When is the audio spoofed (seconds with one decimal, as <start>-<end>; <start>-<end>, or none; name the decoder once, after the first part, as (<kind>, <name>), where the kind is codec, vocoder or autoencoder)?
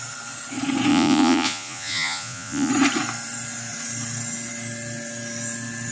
0.9-2.7 (vocoder, Vocos)